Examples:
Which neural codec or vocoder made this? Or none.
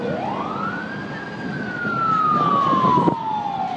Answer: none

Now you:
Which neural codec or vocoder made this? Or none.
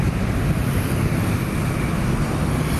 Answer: none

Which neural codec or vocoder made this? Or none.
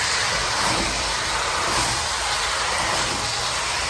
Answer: vocoder, BigVGAN v2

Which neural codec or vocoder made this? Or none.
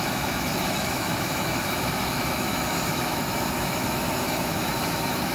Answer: autoencoder, DAC-VAE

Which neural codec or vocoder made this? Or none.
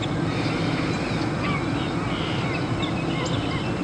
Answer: none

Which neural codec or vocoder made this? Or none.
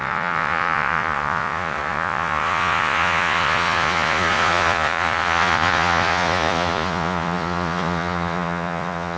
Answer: vocoder, Vocos